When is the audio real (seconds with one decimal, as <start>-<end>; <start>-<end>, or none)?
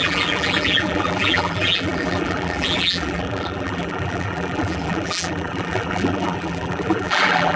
none